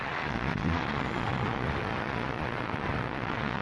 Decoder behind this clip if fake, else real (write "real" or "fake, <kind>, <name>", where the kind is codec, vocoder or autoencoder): fake, vocoder, Vocos